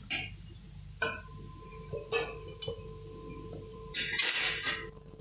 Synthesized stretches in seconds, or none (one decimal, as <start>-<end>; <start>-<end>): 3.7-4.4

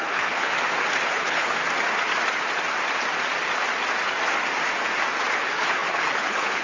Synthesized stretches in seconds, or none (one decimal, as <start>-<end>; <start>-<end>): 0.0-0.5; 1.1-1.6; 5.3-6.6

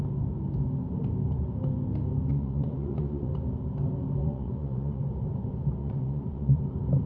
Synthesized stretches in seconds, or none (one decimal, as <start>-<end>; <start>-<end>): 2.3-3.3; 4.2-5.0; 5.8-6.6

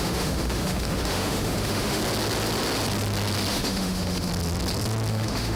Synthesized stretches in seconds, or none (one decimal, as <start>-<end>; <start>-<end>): 0.0-2.0; 3.5-4.3; 5.1-5.6

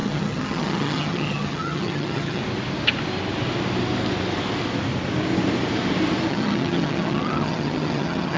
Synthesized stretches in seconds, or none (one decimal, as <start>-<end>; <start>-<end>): 0.0-2.4; 6.3-8.4